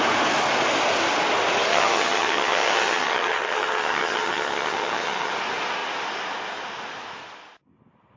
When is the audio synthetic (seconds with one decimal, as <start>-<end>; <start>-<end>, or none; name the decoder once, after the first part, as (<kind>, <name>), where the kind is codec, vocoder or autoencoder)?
1.7-5.3 (vocoder, HiFi-GAN)